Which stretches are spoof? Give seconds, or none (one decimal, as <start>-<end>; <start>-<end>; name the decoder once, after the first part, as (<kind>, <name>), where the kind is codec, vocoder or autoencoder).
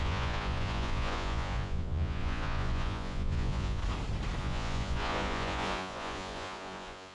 0.0-3.8 (vocoder, Vocos); 4.4-7.1